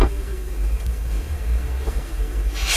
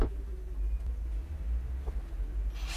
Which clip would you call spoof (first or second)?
first